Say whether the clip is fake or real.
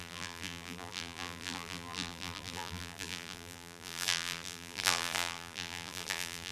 fake